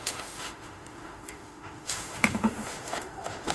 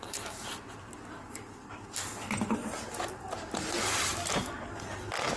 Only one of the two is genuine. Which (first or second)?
second